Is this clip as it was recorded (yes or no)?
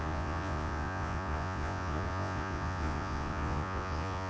no